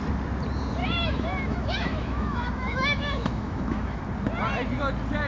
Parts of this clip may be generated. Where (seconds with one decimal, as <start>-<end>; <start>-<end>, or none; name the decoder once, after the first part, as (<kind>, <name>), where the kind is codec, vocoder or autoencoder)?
0.8-4.0 (autoencoder, DAC-VAE)